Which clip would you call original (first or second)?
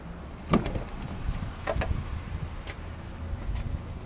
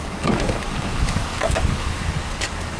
first